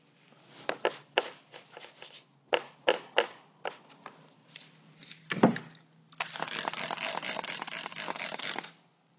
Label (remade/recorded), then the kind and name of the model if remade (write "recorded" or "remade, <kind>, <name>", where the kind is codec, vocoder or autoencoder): recorded